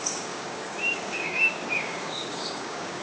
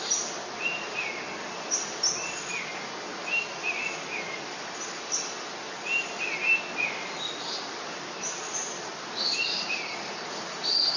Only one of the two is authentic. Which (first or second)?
second